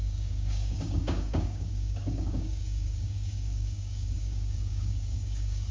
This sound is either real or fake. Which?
fake